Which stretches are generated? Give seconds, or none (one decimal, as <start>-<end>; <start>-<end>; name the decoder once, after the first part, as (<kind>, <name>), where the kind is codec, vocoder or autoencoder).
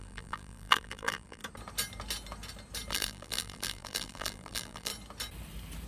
0.0-1.4 (vocoder, BigVGAN v2); 2.9-4.9